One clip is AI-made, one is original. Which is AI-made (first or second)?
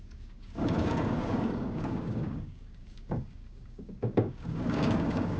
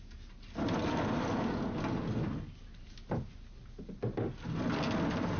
first